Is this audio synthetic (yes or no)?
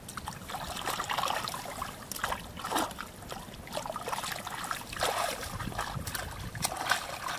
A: no